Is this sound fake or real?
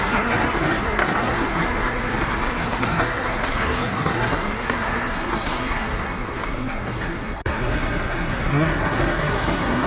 fake